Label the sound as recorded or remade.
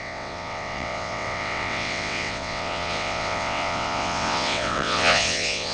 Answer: remade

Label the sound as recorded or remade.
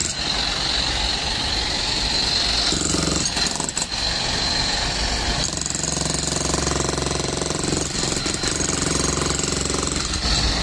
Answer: recorded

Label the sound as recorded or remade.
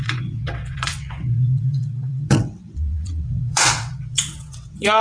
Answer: remade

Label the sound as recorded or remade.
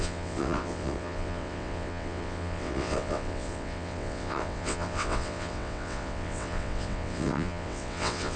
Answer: remade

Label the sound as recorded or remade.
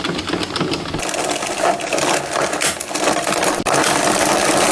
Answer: recorded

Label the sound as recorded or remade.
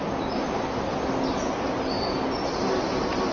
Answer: recorded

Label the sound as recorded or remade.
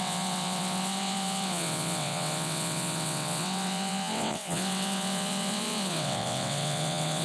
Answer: remade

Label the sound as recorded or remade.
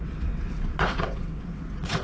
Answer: remade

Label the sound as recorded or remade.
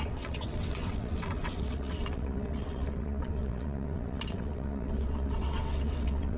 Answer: remade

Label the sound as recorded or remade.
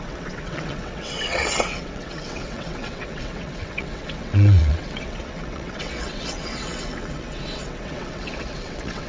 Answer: remade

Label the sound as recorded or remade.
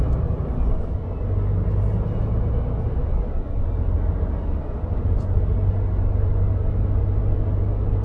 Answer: recorded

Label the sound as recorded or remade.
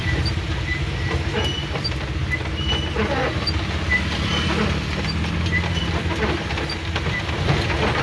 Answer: recorded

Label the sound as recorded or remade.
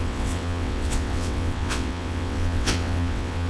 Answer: remade